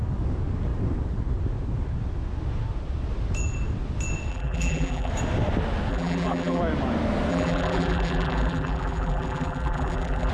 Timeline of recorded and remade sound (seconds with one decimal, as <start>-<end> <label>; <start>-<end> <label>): 0.0-4.3 recorded; 4.3-5.1 remade; 5.1-5.9 recorded; 5.9-6.6 remade; 6.6-7.3 recorded; 7.3-10.3 remade